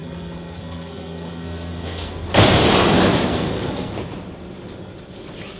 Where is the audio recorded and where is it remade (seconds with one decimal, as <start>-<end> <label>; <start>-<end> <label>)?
0.0-2.1 remade; 2.1-3.3 recorded; 3.3-3.9 remade; 3.9-5.6 recorded